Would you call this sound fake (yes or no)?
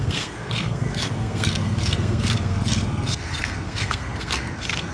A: yes